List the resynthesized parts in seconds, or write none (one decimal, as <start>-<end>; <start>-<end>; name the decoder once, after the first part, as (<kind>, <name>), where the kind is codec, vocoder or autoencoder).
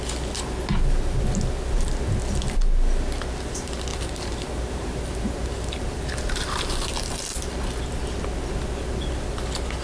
3.9-6.6 (vocoder, BigVGAN v2)